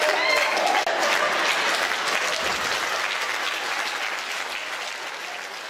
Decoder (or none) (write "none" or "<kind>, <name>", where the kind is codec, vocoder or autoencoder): none